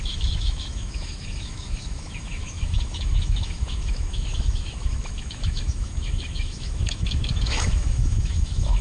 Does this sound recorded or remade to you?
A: remade